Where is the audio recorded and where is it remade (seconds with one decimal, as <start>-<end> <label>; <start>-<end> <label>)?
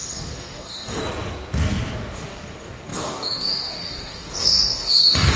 0.0-1.0 remade; 1.0-2.1 recorded; 2.1-5.4 remade